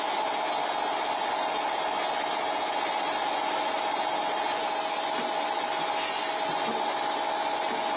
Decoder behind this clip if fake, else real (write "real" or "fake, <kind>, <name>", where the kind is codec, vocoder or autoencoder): real